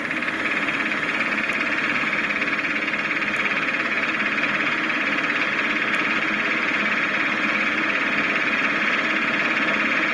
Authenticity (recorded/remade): recorded